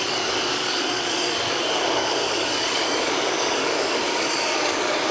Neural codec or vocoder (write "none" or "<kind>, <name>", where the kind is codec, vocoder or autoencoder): codec, DAC